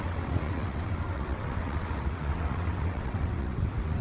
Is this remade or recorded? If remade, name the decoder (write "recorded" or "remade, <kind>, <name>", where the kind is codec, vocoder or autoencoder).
remade, vocoder, WaveNeXt